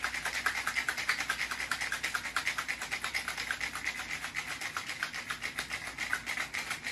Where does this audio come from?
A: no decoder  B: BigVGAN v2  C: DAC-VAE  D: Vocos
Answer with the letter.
A